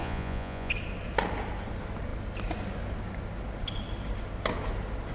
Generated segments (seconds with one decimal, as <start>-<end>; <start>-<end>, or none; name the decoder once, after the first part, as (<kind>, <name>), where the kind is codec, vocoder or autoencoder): 0.0-0.7 (vocoder, Vocos)